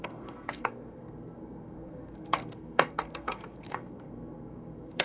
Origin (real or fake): fake